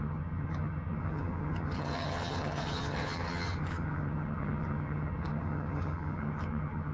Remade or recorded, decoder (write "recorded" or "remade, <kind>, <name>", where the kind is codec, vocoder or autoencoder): remade, vocoder, HiFi-GAN